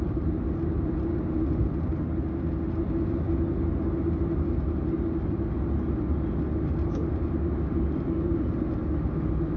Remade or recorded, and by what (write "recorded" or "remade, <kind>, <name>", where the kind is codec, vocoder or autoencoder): recorded